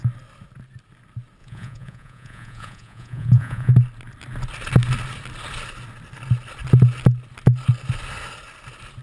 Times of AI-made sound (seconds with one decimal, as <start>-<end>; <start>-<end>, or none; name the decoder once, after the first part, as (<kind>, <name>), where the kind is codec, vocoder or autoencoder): 1.4-3.7 (vocoder, Vocos)